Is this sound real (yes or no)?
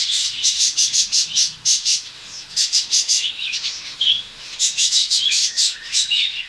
no